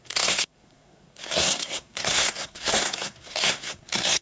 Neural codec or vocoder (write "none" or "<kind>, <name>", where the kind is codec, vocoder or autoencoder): codec, SNAC